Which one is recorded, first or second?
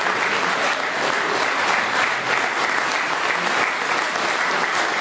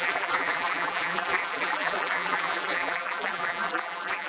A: first